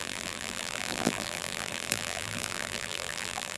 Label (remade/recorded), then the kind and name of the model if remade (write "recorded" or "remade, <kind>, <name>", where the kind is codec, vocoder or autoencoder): remade, vocoder, BigVGAN v2